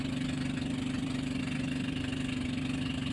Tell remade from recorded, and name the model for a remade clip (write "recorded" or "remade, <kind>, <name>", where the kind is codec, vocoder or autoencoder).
recorded